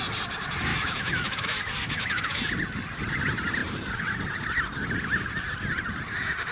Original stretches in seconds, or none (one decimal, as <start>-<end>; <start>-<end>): 0.0-0.7; 2.4-6.5